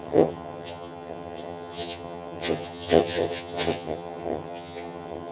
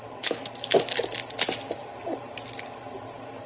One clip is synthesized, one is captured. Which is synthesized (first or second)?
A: first